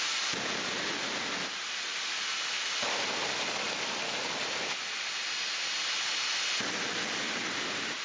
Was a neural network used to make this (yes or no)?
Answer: no